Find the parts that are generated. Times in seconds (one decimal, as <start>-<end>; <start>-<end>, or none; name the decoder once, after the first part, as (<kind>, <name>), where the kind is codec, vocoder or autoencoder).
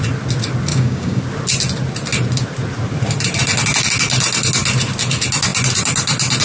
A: 0.7-1.2 (codec, DAC)